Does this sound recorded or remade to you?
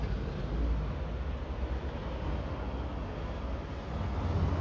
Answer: recorded